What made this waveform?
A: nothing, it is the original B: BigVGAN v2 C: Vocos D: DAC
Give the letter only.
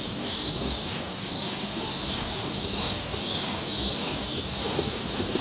D